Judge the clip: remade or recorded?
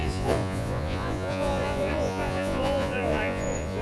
remade